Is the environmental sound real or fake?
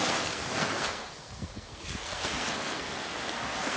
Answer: fake